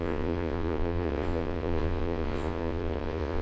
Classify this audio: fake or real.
fake